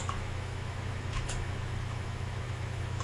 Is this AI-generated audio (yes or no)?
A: yes